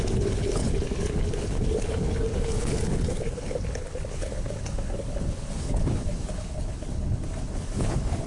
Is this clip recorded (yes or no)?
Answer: no